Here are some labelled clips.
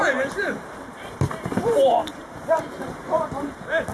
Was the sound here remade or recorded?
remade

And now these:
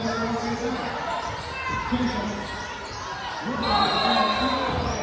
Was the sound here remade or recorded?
recorded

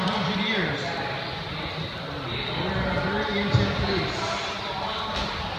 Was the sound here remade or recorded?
recorded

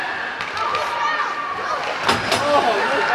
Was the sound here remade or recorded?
recorded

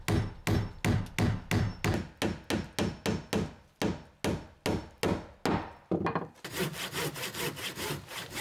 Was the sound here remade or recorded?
recorded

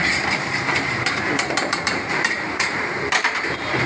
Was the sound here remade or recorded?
remade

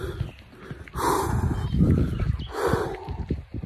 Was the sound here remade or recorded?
recorded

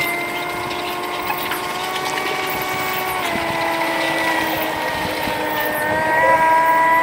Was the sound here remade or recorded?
recorded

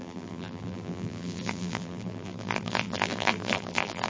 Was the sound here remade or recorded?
remade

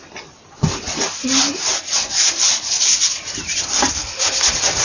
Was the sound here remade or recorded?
recorded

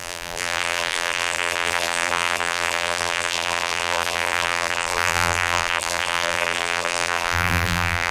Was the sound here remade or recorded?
remade